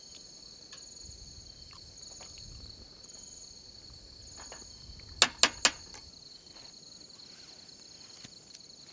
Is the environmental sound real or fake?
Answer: real